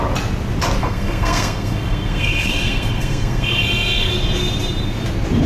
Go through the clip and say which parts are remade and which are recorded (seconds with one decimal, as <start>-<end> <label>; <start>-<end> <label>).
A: 0.0-0.8 recorded; 0.8-4.1 remade; 4.1-5.5 recorded